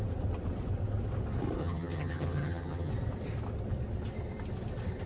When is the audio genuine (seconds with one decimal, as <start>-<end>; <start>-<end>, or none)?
0.0-1.6; 2.9-5.1